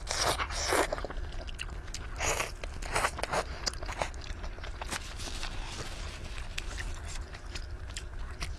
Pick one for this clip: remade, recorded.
recorded